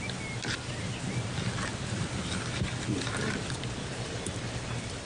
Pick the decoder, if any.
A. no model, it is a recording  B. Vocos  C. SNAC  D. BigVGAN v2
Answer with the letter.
A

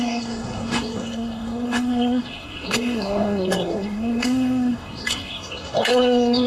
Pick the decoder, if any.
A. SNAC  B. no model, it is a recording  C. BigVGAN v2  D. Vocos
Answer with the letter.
A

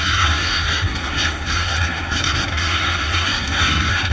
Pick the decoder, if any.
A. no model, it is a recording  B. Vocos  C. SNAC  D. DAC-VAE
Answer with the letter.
C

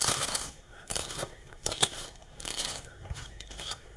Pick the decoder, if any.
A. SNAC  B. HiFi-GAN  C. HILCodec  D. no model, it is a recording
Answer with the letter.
A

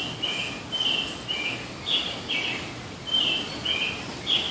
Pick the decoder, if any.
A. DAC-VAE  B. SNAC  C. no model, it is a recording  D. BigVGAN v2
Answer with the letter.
C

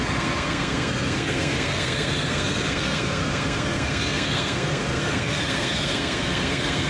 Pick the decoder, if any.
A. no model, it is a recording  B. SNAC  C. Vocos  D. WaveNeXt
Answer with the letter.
B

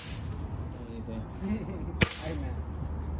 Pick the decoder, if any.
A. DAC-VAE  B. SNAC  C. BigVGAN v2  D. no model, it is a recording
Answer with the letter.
D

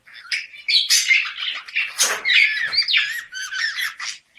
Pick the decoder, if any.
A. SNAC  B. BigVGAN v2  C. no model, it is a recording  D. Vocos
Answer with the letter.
C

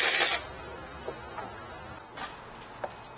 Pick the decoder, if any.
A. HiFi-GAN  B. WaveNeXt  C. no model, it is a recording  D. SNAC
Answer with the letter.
C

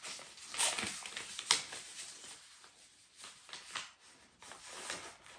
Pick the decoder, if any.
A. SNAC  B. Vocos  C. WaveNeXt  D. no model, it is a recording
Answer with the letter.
D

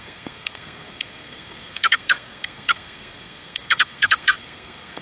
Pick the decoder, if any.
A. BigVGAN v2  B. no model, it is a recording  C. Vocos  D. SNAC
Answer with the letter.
D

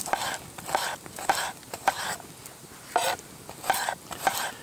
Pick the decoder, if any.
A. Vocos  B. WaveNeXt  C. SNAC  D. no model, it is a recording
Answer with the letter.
D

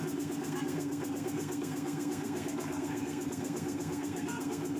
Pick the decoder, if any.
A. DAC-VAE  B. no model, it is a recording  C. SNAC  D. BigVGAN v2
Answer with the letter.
C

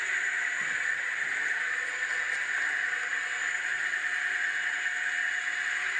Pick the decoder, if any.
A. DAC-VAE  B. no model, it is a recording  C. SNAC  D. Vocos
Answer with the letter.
B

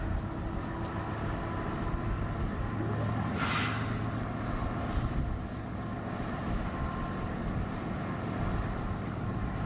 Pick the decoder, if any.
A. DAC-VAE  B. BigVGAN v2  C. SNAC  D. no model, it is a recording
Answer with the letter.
D